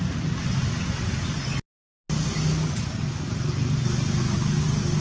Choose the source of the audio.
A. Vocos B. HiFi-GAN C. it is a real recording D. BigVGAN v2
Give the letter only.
C